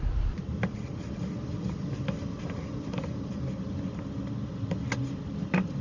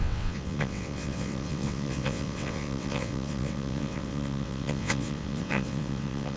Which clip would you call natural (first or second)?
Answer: first